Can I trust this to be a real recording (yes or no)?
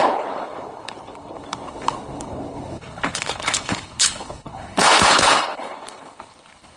no